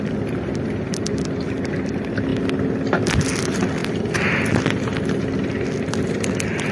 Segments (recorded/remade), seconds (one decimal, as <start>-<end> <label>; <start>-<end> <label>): 0.0-6.7 recorded

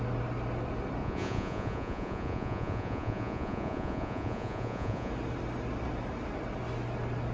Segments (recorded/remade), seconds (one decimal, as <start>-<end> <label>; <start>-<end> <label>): 0.0-1.0 recorded; 1.0-5.1 remade; 5.1-7.3 recorded

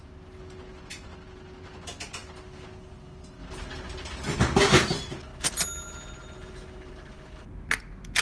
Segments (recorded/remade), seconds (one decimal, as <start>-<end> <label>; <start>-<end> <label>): 0.0-8.2 recorded

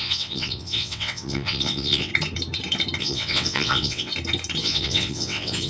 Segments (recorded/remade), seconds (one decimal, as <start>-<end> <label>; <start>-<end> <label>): 0.0-2.1 remade; 2.1-3.0 recorded; 3.0-4.1 remade; 4.1-4.6 recorded; 4.6-5.7 remade

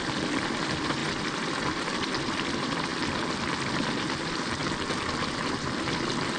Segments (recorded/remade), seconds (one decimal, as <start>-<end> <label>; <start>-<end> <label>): 0.0-2.9 remade; 2.9-3.8 recorded; 3.8-4.6 remade; 4.6-5.3 recorded; 5.3-6.4 remade